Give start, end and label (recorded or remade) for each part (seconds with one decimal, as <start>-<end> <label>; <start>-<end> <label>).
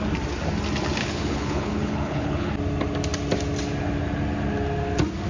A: 0.0-1.0 recorded; 1.0-2.5 remade; 2.5-5.3 recorded